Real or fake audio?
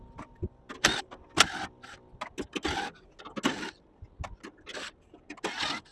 real